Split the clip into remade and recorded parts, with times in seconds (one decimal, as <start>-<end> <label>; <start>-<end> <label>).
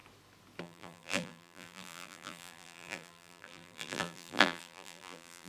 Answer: 0.0-0.6 recorded; 0.6-5.5 remade